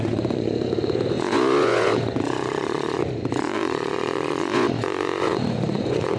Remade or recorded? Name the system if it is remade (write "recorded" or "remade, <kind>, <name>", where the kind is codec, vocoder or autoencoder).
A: remade, vocoder, Vocos